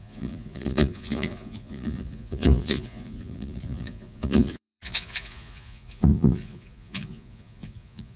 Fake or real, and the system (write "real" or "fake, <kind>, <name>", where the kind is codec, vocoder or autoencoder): fake, vocoder, Vocos